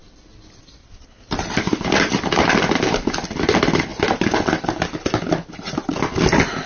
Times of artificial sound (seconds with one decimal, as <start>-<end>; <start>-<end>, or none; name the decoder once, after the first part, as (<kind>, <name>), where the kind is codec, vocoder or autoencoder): 0.0-3.9 (vocoder, BigVGAN v2)